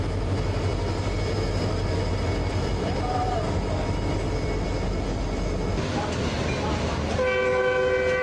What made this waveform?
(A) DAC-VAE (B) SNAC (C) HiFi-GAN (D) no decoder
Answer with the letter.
D